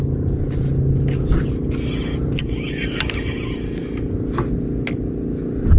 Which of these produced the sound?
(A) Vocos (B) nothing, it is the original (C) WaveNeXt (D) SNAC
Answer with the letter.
B